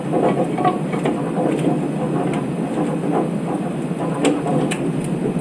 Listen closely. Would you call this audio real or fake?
real